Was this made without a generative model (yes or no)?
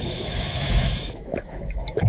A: no